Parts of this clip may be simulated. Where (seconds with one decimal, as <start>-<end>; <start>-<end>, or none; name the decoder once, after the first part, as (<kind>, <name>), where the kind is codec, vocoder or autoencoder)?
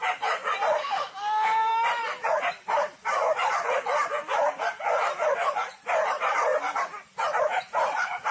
0.8-1.7 (autoencoder, DAC-VAE)